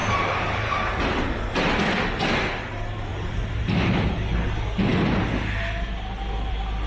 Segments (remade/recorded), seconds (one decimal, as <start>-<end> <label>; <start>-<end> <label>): 0.0-1.2 remade; 1.2-3.1 recorded; 3.1-4.3 remade; 4.3-6.9 recorded